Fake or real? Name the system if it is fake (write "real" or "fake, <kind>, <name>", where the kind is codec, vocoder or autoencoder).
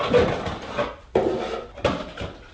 real